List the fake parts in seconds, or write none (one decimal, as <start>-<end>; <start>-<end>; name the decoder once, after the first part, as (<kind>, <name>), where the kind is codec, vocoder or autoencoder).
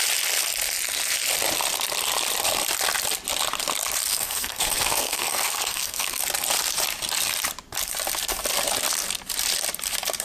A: 4.1-6.2 (codec, SNAC)